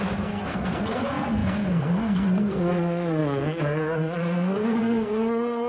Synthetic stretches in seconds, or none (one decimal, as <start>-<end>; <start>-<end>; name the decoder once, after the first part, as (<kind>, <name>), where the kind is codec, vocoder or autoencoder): 0.0-5.7 (codec, SNAC)